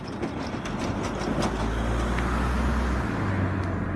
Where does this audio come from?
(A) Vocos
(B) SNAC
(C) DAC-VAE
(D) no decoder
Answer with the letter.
D